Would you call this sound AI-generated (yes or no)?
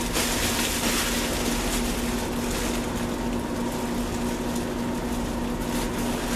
no